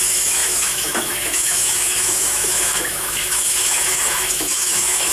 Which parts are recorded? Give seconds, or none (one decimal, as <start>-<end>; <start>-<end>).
none